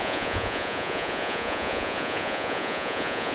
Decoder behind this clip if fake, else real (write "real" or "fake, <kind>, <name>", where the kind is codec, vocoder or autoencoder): fake, vocoder, Vocos